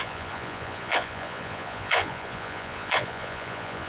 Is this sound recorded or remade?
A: remade